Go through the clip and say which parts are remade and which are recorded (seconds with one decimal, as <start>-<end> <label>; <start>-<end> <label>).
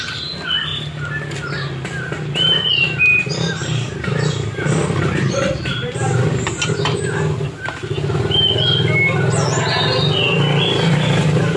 0.0-11.6 recorded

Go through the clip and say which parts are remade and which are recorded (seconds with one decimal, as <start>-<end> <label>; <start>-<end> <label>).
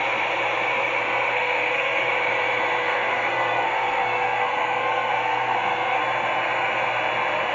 0.0-1.3 recorded; 1.3-2.1 remade; 2.1-2.8 recorded; 2.8-6.0 remade; 6.0-7.5 recorded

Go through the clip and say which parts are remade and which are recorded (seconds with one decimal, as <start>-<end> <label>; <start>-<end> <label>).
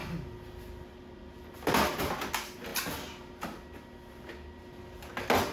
0.0-5.5 recorded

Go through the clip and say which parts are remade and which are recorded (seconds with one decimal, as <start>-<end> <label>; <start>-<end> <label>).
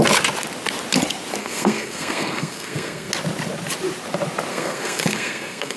0.0-1.4 recorded; 1.4-3.1 remade; 3.1-4.5 recorded; 4.5-5.8 remade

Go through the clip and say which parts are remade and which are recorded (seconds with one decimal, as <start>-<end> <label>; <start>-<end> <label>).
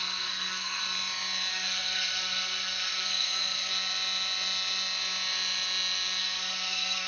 0.0-0.8 remade; 0.8-1.5 recorded; 1.5-3.7 remade; 3.7-6.2 recorded; 6.2-7.1 remade